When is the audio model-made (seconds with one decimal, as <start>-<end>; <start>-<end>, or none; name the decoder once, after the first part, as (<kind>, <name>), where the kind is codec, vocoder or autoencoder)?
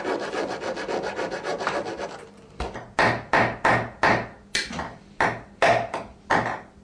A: none